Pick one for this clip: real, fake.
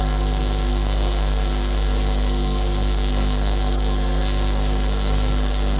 fake